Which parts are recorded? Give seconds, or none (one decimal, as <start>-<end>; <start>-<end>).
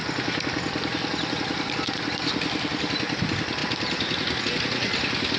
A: 0.0-5.4